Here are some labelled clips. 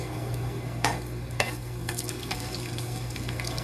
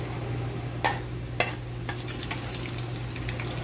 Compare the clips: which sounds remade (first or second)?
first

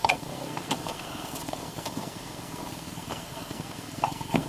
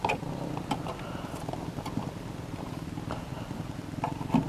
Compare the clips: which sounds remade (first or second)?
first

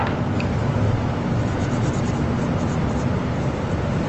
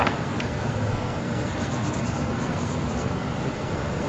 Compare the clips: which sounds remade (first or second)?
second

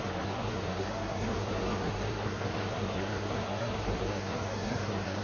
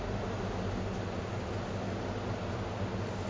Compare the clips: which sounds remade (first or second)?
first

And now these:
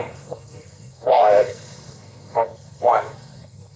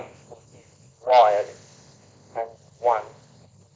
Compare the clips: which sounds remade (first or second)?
first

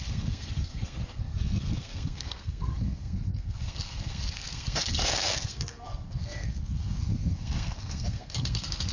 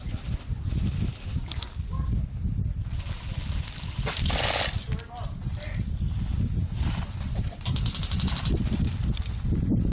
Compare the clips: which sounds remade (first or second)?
first